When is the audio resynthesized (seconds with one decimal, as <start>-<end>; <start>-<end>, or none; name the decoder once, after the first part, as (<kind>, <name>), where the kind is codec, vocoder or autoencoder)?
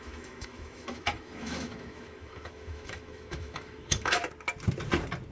0.0-4.2 (autoencoder, DAC-VAE)